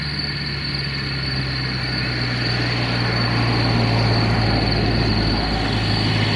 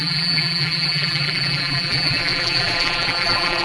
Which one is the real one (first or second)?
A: first